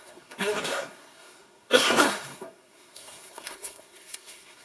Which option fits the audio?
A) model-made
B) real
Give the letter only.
A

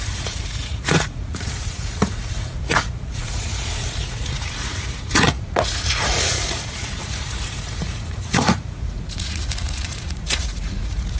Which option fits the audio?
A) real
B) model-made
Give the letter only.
B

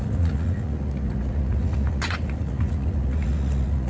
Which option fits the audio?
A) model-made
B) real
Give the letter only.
A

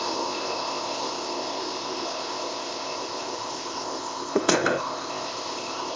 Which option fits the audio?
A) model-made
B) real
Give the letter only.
A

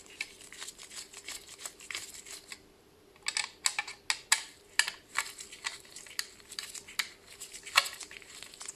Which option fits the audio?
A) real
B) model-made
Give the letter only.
A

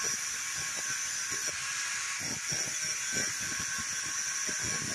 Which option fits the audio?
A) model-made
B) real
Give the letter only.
B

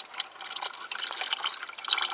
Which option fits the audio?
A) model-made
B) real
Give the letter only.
B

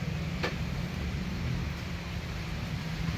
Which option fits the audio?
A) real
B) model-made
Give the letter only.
B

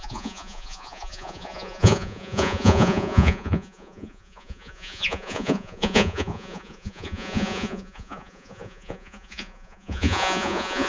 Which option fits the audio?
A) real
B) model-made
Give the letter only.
B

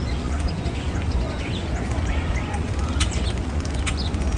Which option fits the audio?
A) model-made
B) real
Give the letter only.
A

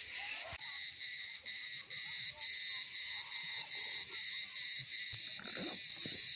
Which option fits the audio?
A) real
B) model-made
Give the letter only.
A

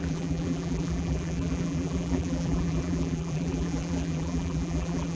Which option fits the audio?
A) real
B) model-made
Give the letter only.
B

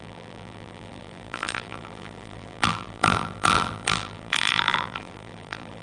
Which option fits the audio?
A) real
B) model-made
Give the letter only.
B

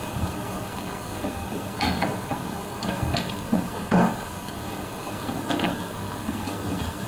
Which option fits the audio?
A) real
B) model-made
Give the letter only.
B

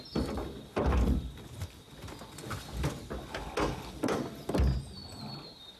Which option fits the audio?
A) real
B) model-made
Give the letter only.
A